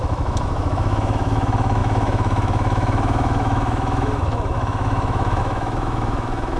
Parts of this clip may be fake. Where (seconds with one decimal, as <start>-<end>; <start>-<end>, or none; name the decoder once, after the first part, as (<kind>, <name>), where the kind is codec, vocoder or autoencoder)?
0.0-6.6 (autoencoder, DAC-VAE)